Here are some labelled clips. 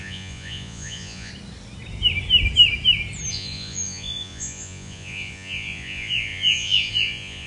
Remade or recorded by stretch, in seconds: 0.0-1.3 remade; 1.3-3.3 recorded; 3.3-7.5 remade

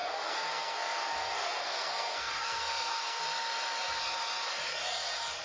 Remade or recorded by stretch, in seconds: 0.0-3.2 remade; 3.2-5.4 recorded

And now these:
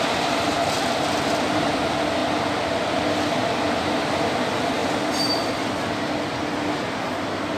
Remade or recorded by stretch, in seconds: 0.0-2.2 remade; 2.2-4.0 recorded; 4.0-4.8 remade; 4.8-7.6 recorded

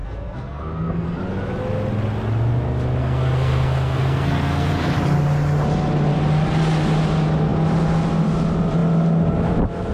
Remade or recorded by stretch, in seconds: 0.0-1.2 remade; 1.2-3.0 recorded; 3.0-4.7 remade; 4.7-9.9 recorded

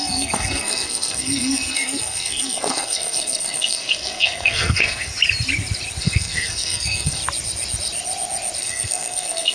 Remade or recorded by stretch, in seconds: 0.0-5.1 remade; 5.1-6.0 recorded; 6.0-7.2 remade; 7.2-8.6 recorded; 8.6-9.5 remade

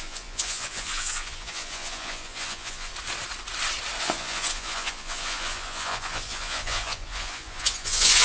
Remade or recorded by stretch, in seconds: 0.0-2.9 remade; 2.9-4.0 recorded; 4.0-8.2 remade